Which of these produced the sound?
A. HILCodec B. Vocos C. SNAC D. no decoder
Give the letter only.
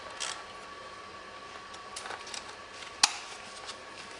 D